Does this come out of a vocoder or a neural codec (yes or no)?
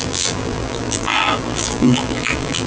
yes